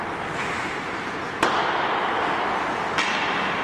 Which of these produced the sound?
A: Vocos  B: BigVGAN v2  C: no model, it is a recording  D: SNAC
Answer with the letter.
C